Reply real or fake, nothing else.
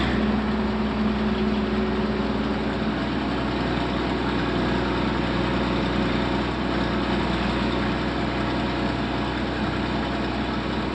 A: real